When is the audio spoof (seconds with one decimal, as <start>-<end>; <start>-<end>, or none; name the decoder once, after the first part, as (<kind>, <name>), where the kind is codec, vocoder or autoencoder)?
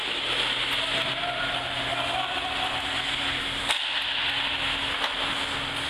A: none